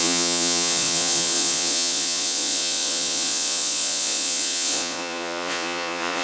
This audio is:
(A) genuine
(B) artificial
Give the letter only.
B